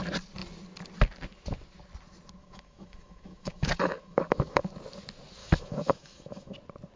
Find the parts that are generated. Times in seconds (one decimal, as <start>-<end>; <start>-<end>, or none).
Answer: 2.4-4.7; 5.4-6.5